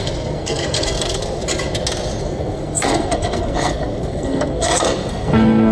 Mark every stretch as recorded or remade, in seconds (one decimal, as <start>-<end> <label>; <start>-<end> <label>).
0.0-1.4 remade; 1.4-2.2 recorded; 2.2-5.7 remade